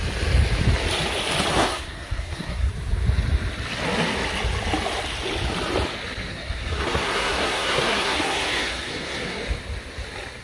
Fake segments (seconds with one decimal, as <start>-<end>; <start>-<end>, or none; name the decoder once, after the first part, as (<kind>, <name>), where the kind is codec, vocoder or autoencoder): 1.5-2.7 (codec, SNAC); 6.3-9.4